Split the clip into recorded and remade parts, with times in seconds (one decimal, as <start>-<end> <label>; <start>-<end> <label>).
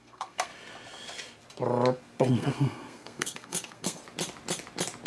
0.0-0.5 remade; 0.5-2.3 recorded; 2.3-4.0 remade; 4.0-5.1 recorded